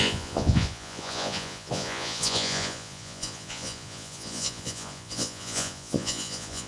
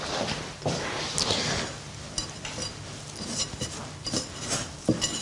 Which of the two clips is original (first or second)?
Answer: second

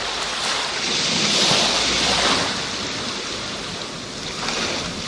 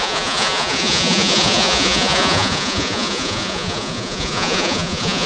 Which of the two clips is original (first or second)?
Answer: first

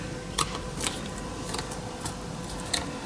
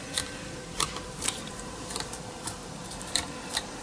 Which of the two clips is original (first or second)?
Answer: first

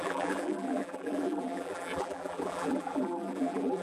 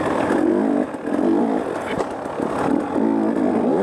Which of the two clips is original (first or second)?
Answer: second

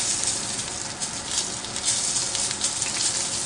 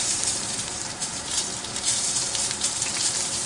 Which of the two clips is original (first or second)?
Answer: first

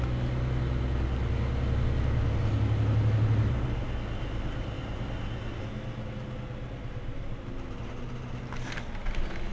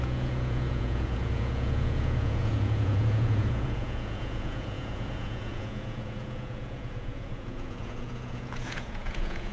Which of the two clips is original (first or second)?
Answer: first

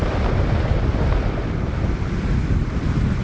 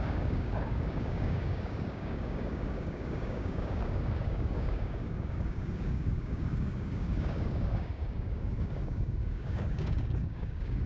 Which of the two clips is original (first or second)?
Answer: first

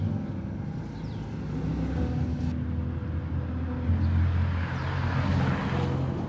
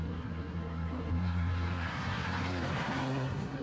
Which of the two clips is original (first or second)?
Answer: first